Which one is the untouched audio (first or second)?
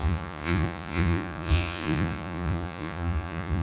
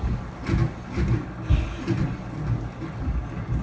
second